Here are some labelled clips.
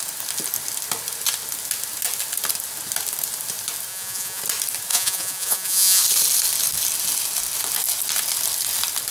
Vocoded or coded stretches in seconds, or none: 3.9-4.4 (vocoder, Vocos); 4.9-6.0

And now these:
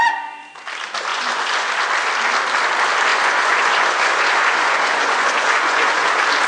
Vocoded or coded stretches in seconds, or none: 1.1-1.7 (vocoder, Vocos); 3.1-6.1

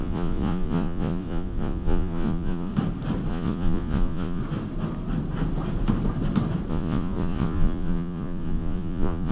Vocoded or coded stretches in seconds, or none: 0.0-2.7 (vocoder, Vocos); 3.3-4.4; 6.7-9.3

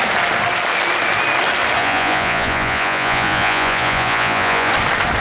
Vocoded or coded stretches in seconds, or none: 1.8-4.7 (vocoder, Vocos)